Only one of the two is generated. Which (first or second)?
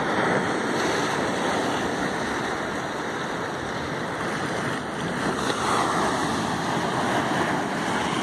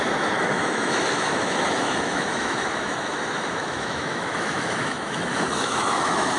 second